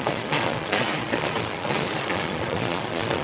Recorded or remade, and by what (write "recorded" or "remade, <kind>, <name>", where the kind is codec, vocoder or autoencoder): remade, vocoder, Vocos